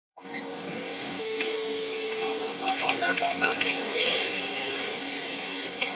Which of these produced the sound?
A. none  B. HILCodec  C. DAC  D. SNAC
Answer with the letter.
C